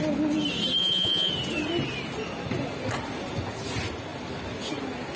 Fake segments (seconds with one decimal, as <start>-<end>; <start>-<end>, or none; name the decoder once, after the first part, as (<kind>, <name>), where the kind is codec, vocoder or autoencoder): 0.8-1.3 (vocoder, Vocos)